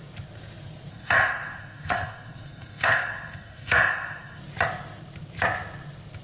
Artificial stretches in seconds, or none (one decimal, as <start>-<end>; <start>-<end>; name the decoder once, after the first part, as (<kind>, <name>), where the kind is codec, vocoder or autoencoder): 0.9-4.4 (codec, SNAC)